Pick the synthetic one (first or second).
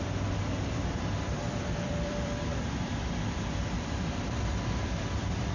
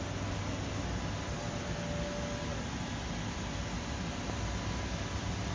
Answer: first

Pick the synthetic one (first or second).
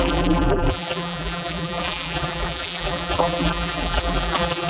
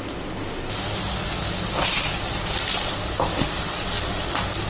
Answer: first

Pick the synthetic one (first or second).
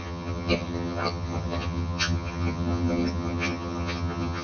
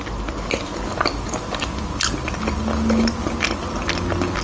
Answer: first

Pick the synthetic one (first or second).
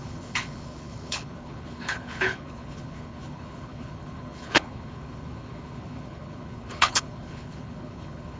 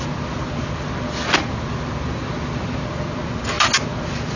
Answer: first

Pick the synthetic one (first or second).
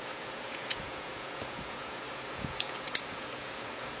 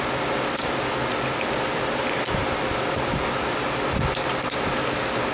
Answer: first